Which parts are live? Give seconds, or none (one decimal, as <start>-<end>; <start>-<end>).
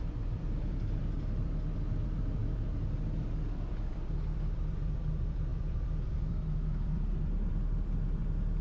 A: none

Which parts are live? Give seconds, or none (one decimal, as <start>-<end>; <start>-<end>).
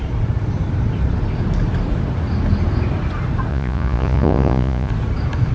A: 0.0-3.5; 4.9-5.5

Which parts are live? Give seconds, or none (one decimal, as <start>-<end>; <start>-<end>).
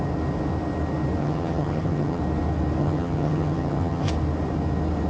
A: 0.0-1.2; 2.2-2.8; 4.1-5.1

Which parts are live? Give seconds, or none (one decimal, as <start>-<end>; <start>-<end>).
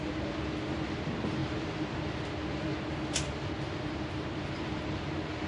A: 0.0-5.5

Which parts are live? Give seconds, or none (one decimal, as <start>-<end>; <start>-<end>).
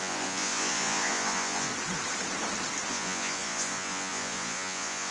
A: 1.7-2.9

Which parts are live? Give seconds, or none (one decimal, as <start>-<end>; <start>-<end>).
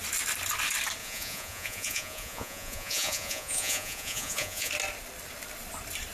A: 0.0-1.0; 4.7-6.1